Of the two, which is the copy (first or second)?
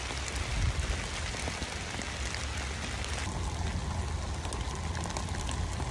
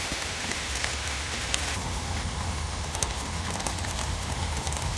second